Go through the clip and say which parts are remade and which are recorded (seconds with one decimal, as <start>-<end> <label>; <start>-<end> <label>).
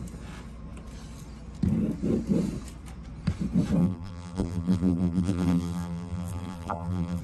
0.0-3.8 recorded; 3.8-7.2 remade